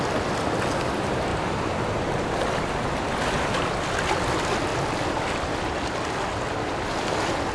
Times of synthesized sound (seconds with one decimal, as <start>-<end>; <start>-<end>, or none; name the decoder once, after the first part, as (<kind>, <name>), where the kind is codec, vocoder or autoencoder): none